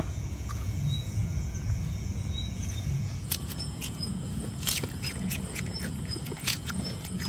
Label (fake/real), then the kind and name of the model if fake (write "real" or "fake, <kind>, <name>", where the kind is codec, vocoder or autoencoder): fake, vocoder, Vocos